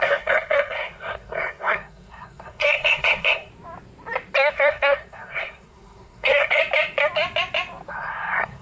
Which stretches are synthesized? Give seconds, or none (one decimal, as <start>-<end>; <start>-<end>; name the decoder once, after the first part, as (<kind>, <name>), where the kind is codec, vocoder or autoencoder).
0.0-3.5 (codec, SNAC); 4.5-6.6; 7.9-8.6